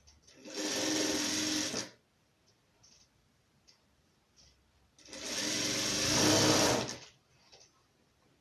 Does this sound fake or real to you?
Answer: real